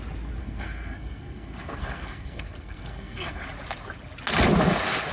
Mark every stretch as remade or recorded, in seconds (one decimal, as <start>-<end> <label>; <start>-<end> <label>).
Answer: 0.0-0.4 recorded; 0.4-3.5 remade; 3.5-5.1 recorded

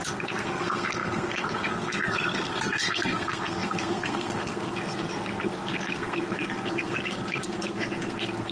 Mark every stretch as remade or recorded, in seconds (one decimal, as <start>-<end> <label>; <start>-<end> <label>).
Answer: 0.0-8.5 remade